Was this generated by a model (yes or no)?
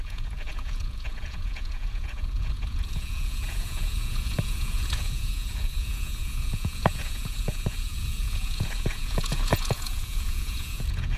yes